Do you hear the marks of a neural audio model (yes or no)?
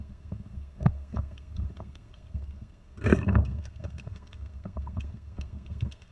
yes